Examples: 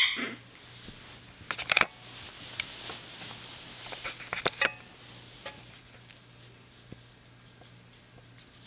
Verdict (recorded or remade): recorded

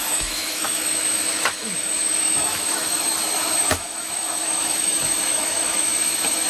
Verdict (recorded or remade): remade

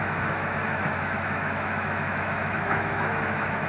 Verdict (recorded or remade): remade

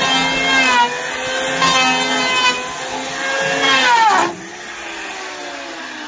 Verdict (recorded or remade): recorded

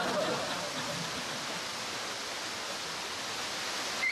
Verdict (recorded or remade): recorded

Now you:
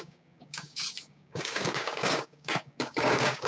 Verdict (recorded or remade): remade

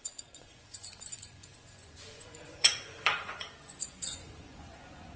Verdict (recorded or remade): remade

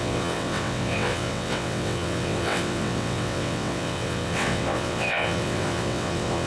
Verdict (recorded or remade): remade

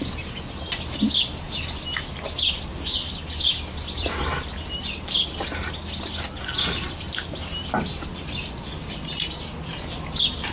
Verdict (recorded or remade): recorded